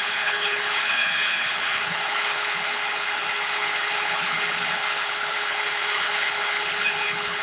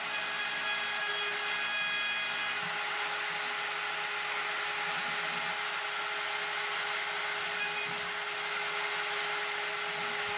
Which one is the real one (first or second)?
second